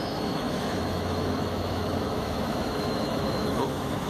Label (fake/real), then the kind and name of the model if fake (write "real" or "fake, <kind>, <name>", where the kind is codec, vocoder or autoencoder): fake, autoencoder, DAC-VAE